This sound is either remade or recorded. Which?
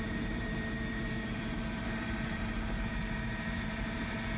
remade